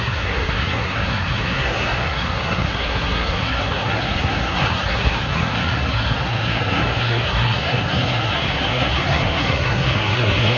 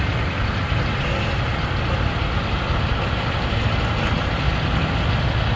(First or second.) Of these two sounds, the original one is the second